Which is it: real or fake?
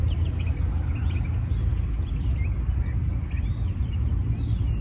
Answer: real